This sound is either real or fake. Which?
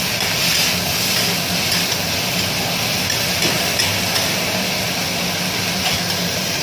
real